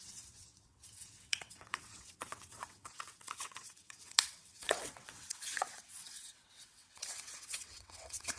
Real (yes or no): no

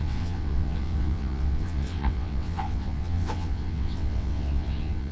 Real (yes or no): no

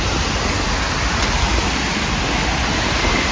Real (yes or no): yes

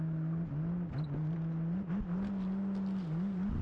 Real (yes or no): yes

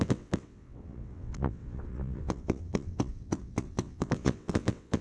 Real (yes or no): no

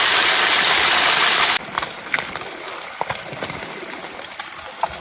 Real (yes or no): yes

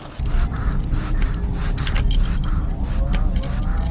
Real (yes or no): yes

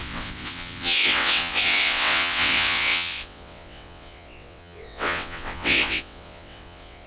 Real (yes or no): no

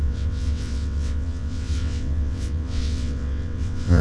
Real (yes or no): no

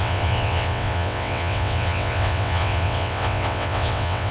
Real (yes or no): no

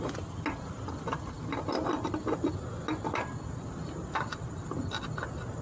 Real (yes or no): yes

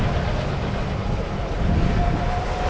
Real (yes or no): yes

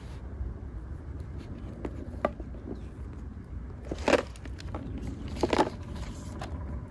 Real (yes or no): yes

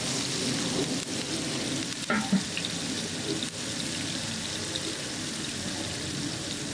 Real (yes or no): yes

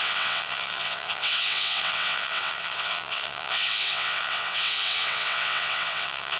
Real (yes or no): no